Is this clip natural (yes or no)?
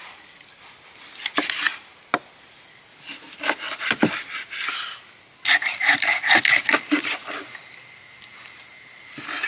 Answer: yes